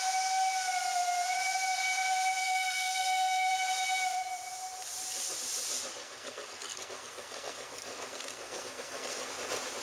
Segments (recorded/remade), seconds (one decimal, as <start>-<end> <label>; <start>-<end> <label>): 0.0-2.4 recorded; 2.4-3.5 remade; 3.5-6.0 recorded; 6.0-9.3 remade; 9.3-9.8 recorded